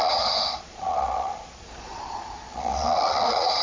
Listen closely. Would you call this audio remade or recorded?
remade